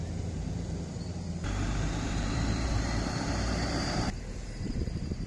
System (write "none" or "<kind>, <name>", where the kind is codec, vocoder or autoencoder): vocoder, BigVGAN v2